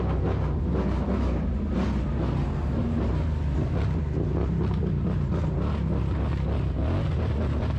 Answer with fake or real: real